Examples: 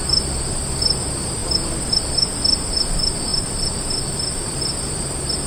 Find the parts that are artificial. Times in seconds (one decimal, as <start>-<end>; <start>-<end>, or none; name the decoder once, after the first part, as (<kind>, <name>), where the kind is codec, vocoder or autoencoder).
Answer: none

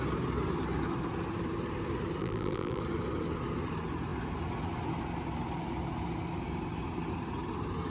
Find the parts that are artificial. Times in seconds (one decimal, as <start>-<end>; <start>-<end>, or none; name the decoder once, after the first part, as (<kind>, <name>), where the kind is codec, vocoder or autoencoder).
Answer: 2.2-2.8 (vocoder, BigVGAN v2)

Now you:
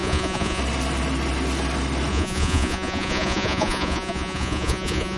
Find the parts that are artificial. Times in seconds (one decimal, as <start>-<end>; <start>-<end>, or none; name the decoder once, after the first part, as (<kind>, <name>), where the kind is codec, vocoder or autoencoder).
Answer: 0.0-0.6 (vocoder, Vocos); 2.1-5.2

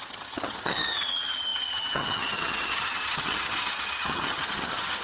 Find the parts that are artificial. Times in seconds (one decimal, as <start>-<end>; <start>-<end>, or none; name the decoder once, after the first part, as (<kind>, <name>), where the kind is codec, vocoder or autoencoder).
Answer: 0.0-5.0 (vocoder, HiFi-GAN)

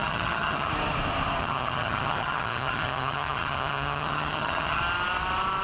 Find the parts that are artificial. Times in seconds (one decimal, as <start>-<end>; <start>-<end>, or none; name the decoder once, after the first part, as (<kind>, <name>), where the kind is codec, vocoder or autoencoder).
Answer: 0.0-0.7 (vocoder, HiFi-GAN); 1.4-4.8

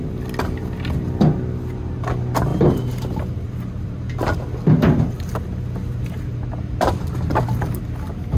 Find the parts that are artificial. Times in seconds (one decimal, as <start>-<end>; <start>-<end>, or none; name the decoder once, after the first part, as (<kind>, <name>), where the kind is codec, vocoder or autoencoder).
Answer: 2.5-4.0 (vocoder, BigVGAN v2)

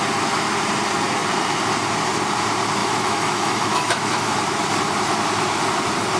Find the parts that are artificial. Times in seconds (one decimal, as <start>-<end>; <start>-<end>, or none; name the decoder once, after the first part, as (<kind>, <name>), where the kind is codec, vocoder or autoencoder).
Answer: 2.8-4.4 (autoencoder, DAC-VAE)